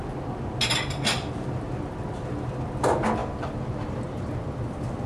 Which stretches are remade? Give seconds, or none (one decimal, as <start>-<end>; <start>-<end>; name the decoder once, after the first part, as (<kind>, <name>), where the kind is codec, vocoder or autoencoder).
none